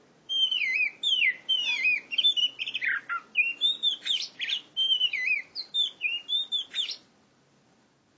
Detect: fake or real real